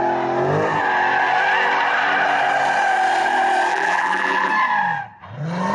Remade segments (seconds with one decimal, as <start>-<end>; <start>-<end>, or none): 3.7-4.5